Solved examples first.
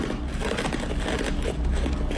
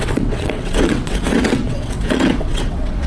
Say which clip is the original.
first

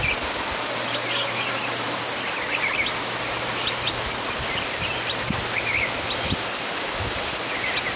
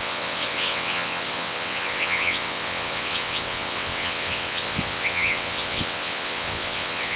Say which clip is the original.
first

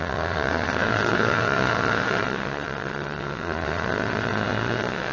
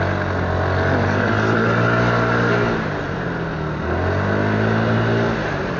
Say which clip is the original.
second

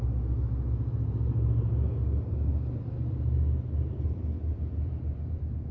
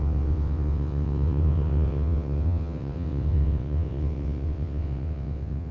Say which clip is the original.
first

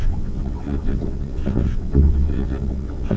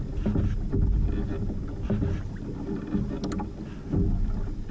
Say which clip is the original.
second